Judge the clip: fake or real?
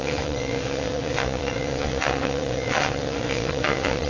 fake